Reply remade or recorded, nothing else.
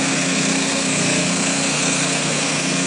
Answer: remade